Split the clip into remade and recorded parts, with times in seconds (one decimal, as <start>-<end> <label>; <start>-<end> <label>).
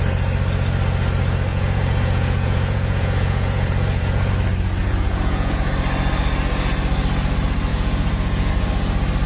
0.0-1.5 recorded; 1.5-4.3 remade; 4.3-4.8 recorded; 4.8-5.7 remade; 5.7-7.7 recorded; 7.7-8.5 remade; 8.5-9.3 recorded